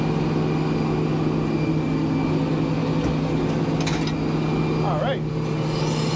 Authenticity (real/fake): real